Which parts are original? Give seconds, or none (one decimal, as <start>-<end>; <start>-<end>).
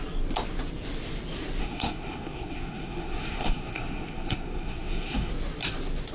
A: 0.0-1.6; 5.3-6.1